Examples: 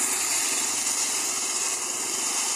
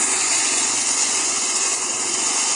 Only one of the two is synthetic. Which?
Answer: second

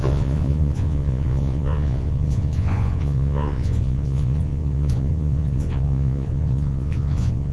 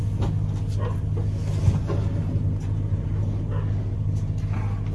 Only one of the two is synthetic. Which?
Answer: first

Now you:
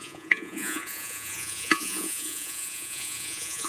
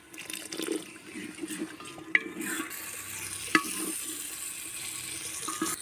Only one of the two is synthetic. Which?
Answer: first